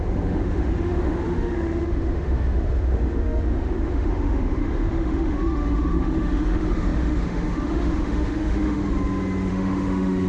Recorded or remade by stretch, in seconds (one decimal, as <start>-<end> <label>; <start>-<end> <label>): 0.0-8.8 remade; 8.8-9.5 recorded; 9.5-10.3 remade